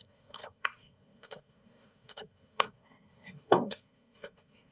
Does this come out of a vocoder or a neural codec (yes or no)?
yes